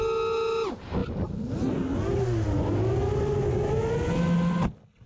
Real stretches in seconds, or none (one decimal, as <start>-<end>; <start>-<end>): 0.0-5.1